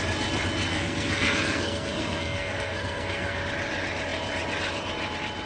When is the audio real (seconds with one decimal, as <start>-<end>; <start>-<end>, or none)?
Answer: 0.0-0.7; 3.4-5.5